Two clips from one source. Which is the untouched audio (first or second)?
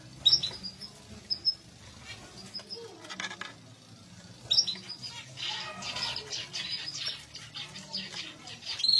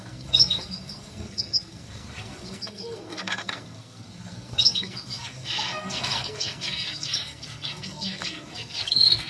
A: first